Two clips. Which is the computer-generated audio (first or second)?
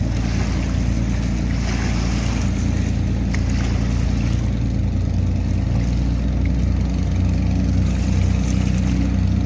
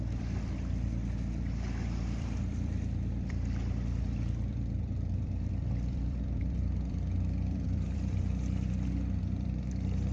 second